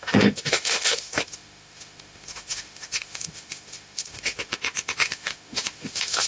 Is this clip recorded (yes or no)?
no